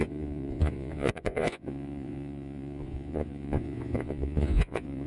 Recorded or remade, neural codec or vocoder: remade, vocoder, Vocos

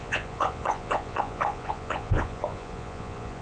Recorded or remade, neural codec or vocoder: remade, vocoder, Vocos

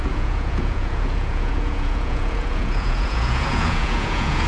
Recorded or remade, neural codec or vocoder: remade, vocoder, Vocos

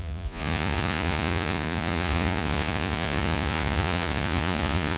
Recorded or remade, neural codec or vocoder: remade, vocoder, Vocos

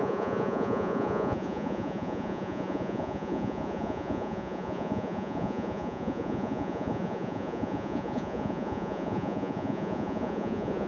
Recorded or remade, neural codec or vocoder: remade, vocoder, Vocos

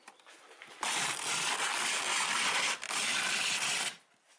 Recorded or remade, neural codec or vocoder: recorded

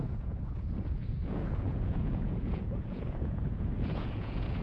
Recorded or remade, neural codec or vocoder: remade, vocoder, Vocos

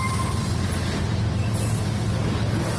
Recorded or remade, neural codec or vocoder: recorded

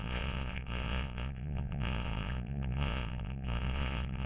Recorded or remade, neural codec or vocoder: remade, vocoder, Vocos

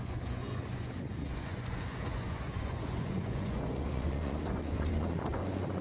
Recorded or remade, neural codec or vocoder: remade, vocoder, Vocos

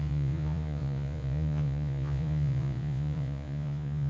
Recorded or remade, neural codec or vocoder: remade, vocoder, Vocos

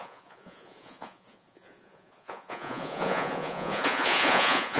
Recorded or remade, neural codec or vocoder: remade, vocoder, Vocos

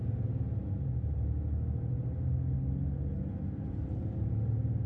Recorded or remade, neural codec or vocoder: recorded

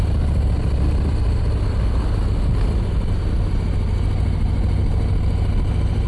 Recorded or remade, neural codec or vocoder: recorded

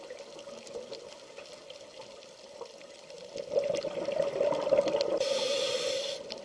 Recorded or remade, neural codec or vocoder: recorded